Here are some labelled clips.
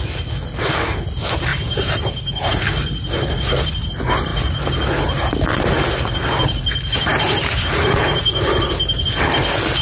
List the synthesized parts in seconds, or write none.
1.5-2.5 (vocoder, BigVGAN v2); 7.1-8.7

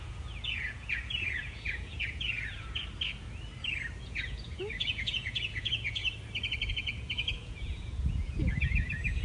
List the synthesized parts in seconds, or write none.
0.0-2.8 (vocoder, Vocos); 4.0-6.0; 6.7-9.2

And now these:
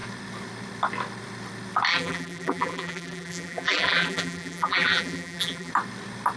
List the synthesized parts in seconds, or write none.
1.9-5.7 (vocoder, BigVGAN v2)

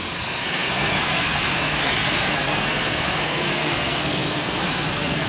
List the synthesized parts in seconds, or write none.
0.0-5.3 (codec, SNAC)

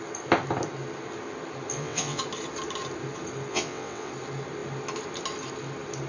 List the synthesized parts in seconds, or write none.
1.7-2.2 (vocoder, WaveNeXt); 3.5-4.1

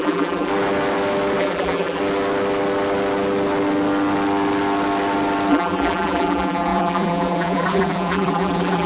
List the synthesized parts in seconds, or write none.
0.0-0.5 (vocoder, BigVGAN v2); 1.4-2.0; 5.5-8.9